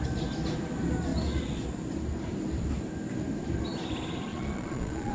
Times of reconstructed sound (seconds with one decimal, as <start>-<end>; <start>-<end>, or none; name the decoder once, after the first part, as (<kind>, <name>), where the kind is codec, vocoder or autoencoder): 4.3-5.1 (vocoder, Vocos)